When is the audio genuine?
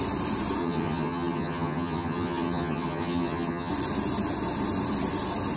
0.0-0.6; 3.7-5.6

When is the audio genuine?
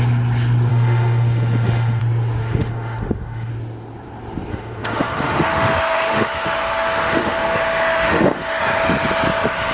0.0-0.7; 2.0-2.4; 3.5-4.5; 8.6-9.7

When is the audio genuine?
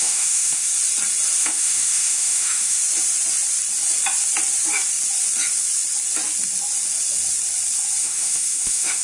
0.7-1.4; 2.8-8.0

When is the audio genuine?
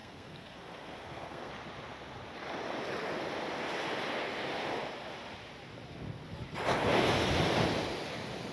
1.5-8.5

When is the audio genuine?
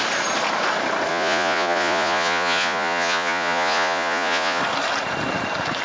0.0-1.1; 4.6-5.8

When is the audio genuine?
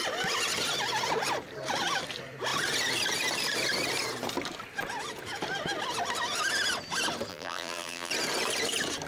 0.0-7.3; 8.1-9.1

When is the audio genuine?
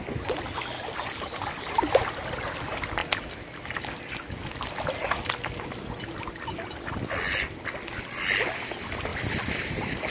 0.0-10.1